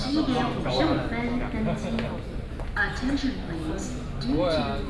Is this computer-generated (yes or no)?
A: no